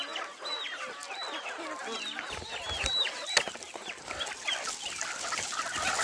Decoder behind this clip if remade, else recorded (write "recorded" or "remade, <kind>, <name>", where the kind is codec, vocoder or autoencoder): recorded